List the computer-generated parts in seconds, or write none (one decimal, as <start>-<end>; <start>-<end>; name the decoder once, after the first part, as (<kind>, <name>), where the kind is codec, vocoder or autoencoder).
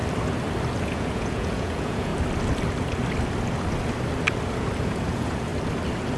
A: 0.8-2.1 (vocoder, Vocos); 4.8-5.5